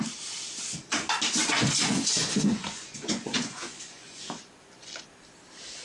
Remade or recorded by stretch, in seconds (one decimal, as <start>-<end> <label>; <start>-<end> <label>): 0.0-1.4 recorded; 1.4-4.9 remade; 4.9-5.8 recorded